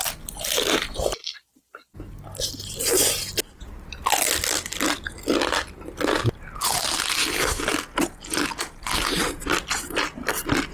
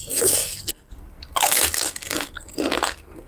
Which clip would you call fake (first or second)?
second